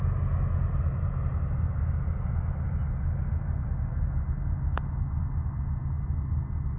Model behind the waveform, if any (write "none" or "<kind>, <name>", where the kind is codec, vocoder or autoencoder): none